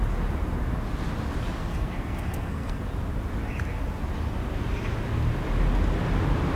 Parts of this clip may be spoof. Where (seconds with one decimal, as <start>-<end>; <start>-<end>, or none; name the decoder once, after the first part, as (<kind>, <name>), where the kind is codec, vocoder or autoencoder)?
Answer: 1.6-2.8 (codec, SNAC)